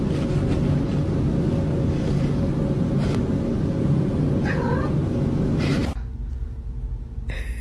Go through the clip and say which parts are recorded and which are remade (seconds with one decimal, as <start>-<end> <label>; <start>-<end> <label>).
0.0-7.6 recorded

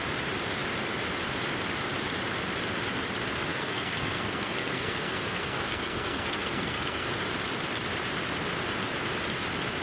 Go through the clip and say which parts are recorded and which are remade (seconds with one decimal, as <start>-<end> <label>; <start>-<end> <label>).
0.0-3.5 recorded; 3.5-7.1 remade; 7.1-9.8 recorded